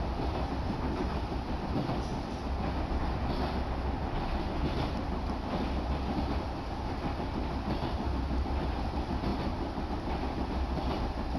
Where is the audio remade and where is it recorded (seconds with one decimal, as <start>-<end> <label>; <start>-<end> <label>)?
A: 0.0-2.1 remade; 2.1-4.4 recorded; 4.4-11.4 remade